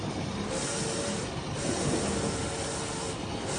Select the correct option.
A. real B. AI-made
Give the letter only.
A